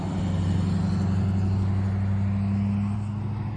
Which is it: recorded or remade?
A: recorded